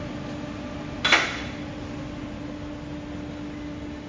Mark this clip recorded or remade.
recorded